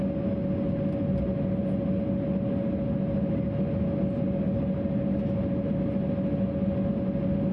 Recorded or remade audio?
recorded